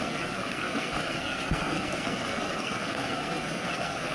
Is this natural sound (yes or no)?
no